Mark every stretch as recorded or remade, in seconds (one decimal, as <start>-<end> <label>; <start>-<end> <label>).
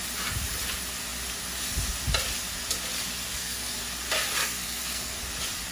0.0-3.3 recorded; 3.3-3.8 remade; 3.8-4.4 recorded; 4.4-5.2 remade; 5.2-5.7 recorded